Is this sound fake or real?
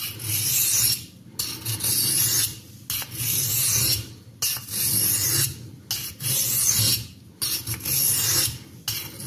real